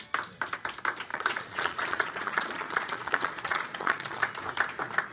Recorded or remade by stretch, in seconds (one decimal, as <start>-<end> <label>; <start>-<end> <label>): 0.0-1.1 recorded; 1.1-4.2 remade; 4.2-5.1 recorded